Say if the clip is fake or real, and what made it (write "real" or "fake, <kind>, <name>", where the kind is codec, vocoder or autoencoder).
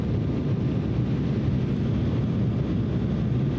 real